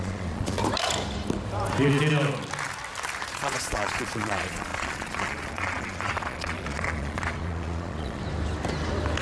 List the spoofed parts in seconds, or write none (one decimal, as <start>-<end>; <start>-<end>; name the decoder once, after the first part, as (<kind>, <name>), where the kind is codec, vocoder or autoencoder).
0.0-0.6 (vocoder, Vocos); 3.3-8.2